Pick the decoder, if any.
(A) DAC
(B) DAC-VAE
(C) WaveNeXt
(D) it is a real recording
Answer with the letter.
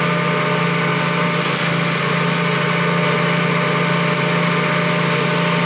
D